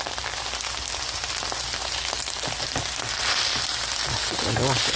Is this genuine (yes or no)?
yes